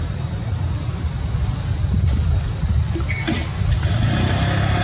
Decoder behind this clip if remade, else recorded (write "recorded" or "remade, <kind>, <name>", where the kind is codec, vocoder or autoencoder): recorded